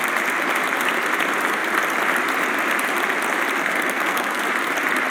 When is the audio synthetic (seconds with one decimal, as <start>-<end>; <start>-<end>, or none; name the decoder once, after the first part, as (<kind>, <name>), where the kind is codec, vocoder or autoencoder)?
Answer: 3.6-4.4 (codec, SNAC)